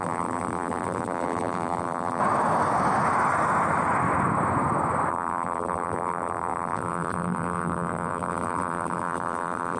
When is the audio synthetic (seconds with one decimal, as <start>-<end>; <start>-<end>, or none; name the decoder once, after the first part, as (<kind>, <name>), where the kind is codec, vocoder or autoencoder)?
0.0-2.2 (vocoder, BigVGAN v2); 5.1-9.8